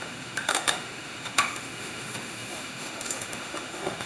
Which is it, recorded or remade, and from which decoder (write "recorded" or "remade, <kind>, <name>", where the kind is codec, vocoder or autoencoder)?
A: remade, autoencoder, DAC-VAE